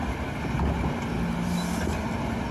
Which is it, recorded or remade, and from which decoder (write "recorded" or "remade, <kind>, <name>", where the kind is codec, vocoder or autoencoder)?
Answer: recorded